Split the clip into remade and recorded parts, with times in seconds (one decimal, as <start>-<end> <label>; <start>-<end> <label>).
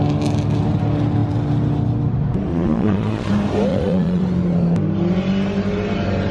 0.0-2.5 recorded; 2.5-3.3 remade; 3.3-3.7 recorded; 3.7-4.2 remade; 4.2-6.3 recorded